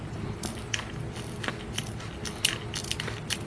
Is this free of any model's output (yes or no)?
yes